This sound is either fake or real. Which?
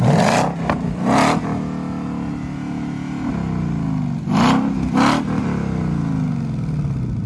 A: real